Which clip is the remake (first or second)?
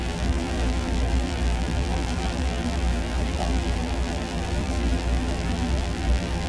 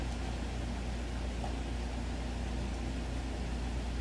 first